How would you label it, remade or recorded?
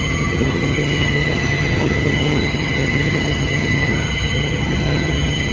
remade